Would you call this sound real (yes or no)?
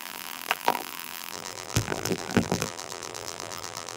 no